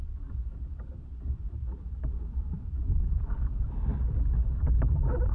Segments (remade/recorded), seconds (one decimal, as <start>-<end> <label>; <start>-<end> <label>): 0.0-3.9 remade; 3.9-4.4 recorded; 4.4-5.3 remade